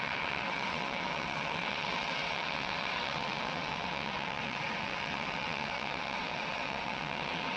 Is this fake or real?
fake